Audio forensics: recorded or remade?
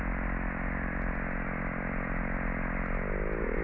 recorded